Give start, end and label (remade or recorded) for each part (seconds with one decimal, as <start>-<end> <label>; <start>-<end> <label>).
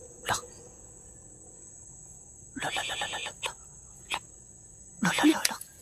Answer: 0.0-3.2 remade; 3.2-4.0 recorded; 4.0-5.8 remade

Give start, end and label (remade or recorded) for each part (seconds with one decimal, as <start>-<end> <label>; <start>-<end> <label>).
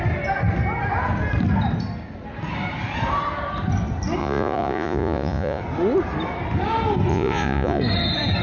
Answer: 0.0-4.2 recorded; 4.2-5.6 remade; 5.6-7.1 recorded; 7.1-7.8 remade; 7.8-8.4 recorded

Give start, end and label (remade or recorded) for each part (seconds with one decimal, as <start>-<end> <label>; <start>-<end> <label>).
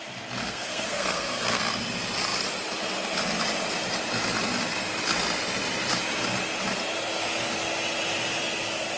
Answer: 0.0-0.4 recorded; 0.4-1.6 remade; 1.6-9.0 recorded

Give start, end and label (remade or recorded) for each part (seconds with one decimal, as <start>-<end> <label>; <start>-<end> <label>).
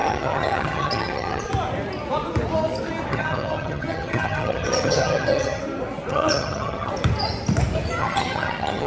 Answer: 0.0-1.5 remade; 1.5-3.1 recorded; 3.1-5.6 remade; 5.6-6.1 recorded; 6.1-6.9 remade; 6.9-8.0 recorded; 8.0-8.9 remade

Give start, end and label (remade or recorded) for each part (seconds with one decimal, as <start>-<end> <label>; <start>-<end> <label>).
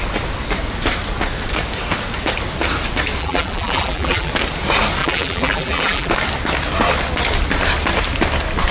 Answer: 0.0-3.2 recorded; 3.2-4.3 remade; 4.3-5.0 recorded; 5.0-6.1 remade; 6.1-8.7 recorded